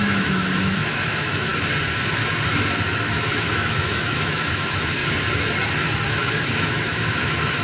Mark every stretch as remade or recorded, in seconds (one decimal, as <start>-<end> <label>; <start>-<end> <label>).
0.0-1.5 remade; 1.5-2.9 recorded; 2.9-5.0 remade; 5.0-6.1 recorded; 6.1-7.6 remade